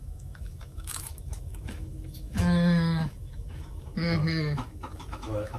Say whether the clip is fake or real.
fake